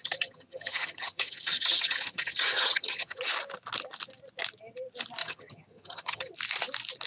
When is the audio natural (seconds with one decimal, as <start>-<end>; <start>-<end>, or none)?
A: 3.2-5.2; 6.3-7.1

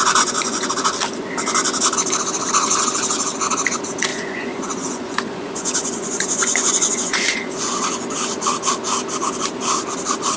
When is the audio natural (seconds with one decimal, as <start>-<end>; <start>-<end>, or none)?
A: 0.7-4.1; 7.9-10.4

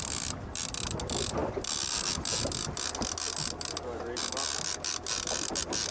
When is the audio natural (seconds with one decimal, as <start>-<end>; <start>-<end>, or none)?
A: 0.0-5.9

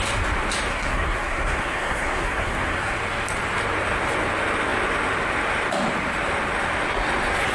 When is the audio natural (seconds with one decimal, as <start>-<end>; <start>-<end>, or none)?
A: 0.0-0.7; 3.0-7.5

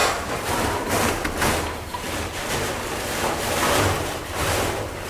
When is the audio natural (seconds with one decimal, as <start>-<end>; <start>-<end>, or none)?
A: 1.1-1.9

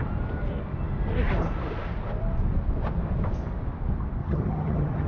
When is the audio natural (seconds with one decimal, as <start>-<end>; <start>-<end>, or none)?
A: 0.0-4.2

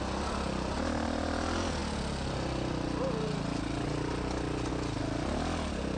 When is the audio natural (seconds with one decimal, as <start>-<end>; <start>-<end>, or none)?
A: 0.0-6.0

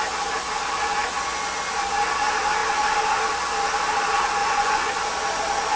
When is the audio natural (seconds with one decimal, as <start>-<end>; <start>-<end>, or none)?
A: 0.0-4.4; 4.9-5.8